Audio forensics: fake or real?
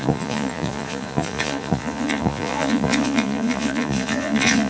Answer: fake